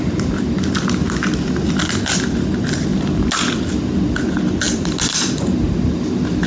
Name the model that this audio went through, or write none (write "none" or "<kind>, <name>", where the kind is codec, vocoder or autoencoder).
none